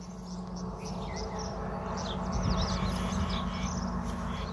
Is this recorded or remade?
recorded